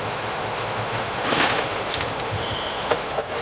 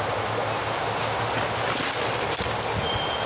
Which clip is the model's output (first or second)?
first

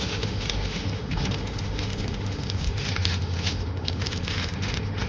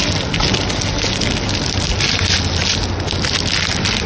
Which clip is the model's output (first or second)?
first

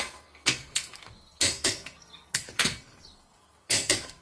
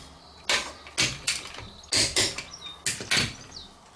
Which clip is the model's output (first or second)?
first